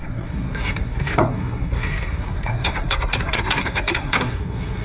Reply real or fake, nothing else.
fake